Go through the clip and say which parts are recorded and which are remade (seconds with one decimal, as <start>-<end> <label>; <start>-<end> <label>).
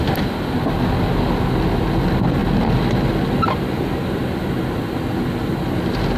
0.0-6.2 recorded